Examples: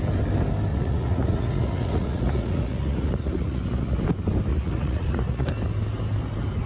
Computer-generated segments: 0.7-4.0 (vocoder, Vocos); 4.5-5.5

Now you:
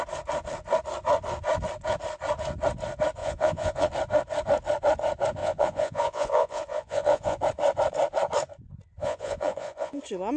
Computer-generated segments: 3.2-3.9 (vocoder, Vocos); 5.4-7.4; 9.0-10.0

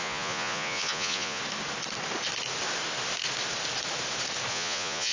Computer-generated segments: 0.0-1.4 (vocoder, Vocos); 4.5-5.1

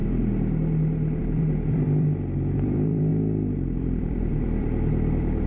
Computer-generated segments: 1.2-3.1 (vocoder, BigVGAN v2); 3.8-5.5

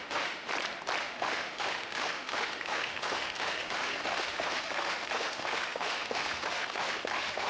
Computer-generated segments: 0.0-0.5 (autoencoder, DAC-VAE); 1.0-7.5

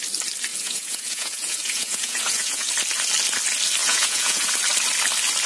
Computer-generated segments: 0.5-2.7 (vocoder, Vocos); 3.8-4.5